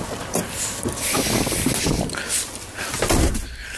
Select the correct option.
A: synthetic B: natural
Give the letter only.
B